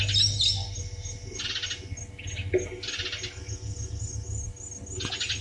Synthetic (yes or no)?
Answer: no